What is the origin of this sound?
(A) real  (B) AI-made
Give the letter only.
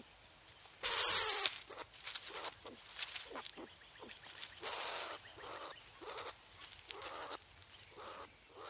A